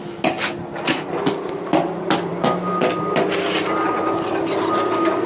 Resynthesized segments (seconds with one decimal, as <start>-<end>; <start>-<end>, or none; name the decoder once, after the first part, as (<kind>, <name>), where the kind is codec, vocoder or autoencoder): none